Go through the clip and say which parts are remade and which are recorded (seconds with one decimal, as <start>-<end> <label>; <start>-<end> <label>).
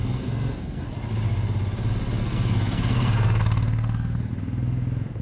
0.0-0.9 remade; 0.9-2.2 recorded; 2.2-4.3 remade; 4.3-5.2 recorded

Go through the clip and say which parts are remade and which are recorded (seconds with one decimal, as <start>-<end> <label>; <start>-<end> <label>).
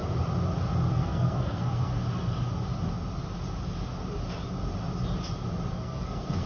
0.0-0.9 recorded; 0.9-1.9 remade; 1.9-5.7 recorded; 5.7-6.5 remade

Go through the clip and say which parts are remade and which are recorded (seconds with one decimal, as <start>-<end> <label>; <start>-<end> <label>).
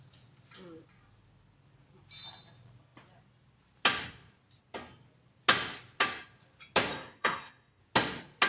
0.0-6.9 recorded; 6.9-7.8 remade; 7.8-8.5 recorded